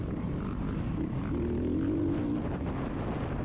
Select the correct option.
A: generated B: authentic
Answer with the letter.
B